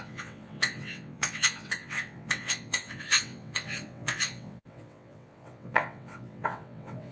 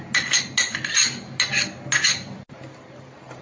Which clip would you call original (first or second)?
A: second